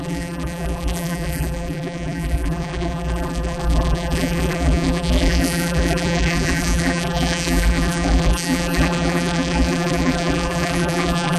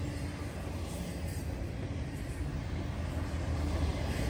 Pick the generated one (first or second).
first